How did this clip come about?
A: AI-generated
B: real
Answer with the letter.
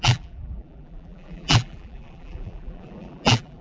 A